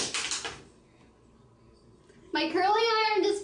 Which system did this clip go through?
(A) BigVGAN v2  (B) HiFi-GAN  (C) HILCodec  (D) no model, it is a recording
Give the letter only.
D